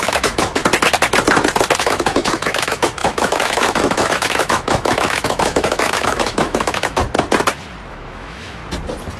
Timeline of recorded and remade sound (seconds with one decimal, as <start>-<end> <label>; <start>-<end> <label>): 0.0-0.6 remade; 0.6-1.8 recorded; 1.8-7.0 remade; 7.0-7.9 recorded; 7.9-8.6 remade; 8.6-9.2 recorded